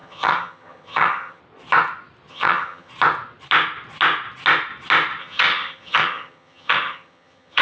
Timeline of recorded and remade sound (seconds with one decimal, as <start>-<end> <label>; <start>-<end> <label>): 0.0-1.4 remade; 1.4-2.3 recorded; 2.3-2.9 remade; 2.9-5.2 recorded; 5.2-7.6 remade